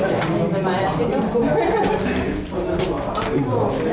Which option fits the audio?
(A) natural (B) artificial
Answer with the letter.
A